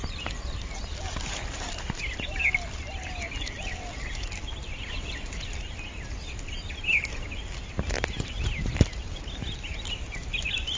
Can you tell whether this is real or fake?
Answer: real